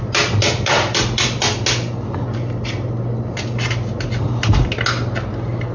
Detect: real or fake real